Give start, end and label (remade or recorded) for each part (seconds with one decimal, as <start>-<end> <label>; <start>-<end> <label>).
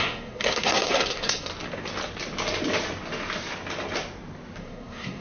0.0-1.5 remade; 1.5-4.6 recorded; 4.6-5.2 remade